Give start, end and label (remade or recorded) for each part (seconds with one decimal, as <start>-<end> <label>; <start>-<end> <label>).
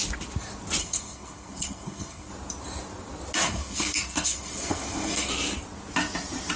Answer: 0.0-0.8 recorded; 0.8-2.3 remade; 2.3-3.4 recorded; 3.4-5.3 remade; 5.3-6.6 recorded